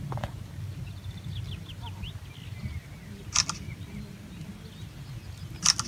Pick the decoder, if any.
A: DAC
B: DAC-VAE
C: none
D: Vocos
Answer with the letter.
C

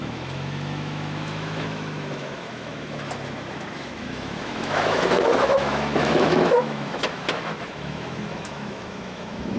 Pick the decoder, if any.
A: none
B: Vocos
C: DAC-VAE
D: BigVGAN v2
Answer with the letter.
C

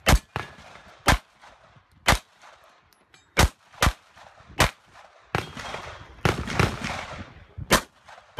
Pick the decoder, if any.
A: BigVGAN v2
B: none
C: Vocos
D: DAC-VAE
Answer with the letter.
B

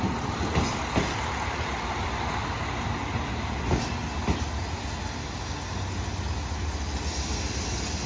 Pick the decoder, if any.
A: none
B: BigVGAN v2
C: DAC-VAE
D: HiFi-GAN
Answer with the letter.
A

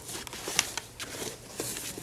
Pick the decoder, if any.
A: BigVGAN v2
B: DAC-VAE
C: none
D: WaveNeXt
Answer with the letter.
C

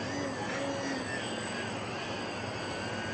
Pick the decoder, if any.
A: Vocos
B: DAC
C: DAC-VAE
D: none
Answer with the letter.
D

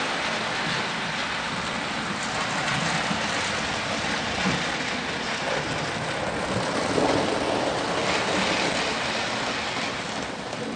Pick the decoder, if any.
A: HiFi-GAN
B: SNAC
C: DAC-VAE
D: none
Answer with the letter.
D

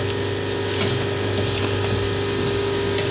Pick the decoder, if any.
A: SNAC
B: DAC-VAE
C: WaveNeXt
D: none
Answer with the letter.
D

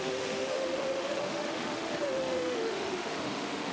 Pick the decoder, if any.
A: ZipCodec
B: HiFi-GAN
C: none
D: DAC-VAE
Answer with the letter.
D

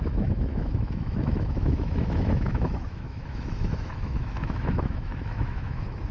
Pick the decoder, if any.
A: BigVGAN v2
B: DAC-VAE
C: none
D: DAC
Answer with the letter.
B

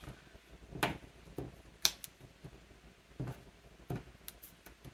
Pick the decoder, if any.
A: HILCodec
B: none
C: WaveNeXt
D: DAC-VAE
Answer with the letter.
B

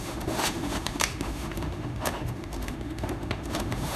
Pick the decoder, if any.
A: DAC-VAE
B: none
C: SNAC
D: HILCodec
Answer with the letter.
A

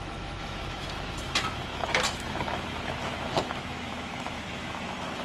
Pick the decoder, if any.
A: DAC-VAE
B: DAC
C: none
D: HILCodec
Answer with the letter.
A